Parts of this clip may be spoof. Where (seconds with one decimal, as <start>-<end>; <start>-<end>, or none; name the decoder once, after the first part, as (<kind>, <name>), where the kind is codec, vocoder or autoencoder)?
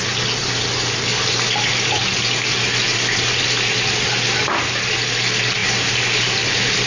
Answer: none